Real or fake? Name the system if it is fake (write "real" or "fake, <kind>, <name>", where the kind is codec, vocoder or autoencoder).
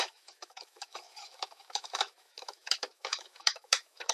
fake, autoencoder, DAC-VAE